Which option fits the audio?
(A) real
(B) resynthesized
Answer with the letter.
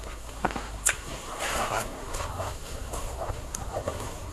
B